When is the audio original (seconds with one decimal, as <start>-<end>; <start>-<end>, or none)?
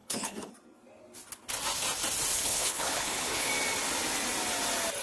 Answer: 0.5-2.3; 3.5-5.0